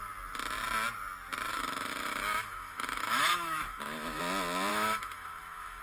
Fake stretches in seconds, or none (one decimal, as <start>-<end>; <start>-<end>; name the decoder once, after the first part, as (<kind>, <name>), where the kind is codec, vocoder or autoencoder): 1.5-4.2 (autoencoder, DAC-VAE); 4.7-5.8

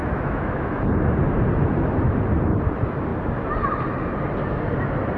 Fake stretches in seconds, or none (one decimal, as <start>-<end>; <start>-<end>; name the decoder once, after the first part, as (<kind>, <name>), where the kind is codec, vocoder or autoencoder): 0.0-0.6 (autoencoder, DAC-VAE)

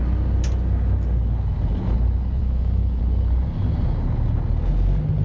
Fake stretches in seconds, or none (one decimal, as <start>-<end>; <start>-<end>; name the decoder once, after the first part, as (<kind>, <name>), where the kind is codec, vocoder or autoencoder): 2.4-3.0 (autoencoder, DAC-VAE)

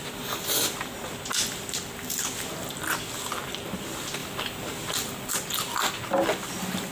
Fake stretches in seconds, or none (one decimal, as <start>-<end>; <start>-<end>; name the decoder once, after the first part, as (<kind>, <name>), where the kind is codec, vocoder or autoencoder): none

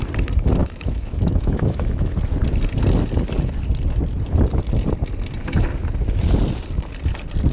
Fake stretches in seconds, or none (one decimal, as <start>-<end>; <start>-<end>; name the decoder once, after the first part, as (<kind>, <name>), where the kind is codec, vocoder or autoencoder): 0.6-2.1 (autoencoder, DAC-VAE)

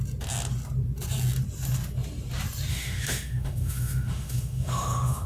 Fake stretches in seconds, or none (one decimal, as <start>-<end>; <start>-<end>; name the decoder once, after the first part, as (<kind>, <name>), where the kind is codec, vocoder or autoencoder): 2.7-5.3 (autoencoder, DAC-VAE)

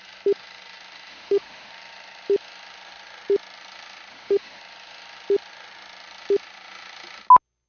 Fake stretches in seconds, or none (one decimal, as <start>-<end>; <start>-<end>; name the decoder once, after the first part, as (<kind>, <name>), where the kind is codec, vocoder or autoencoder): 1.1-1.7 (autoencoder, DAC-VAE); 4.1-4.6